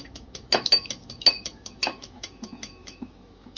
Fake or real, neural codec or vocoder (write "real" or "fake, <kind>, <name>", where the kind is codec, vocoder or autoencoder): fake, autoencoder, DAC-VAE